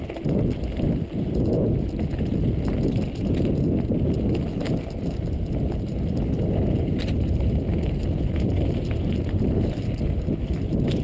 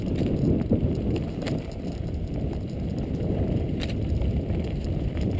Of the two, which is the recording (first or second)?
first